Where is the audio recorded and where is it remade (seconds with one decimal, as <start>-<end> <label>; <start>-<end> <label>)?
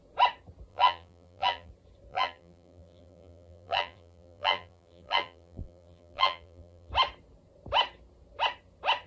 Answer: 0.0-0.7 recorded; 0.7-1.7 remade; 1.7-2.1 recorded; 2.1-6.9 remade; 6.9-9.1 recorded